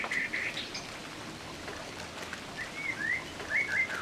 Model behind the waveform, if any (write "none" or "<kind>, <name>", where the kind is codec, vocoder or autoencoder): none